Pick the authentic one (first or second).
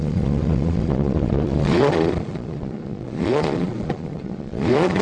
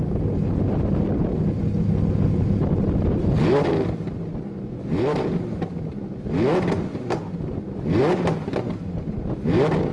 second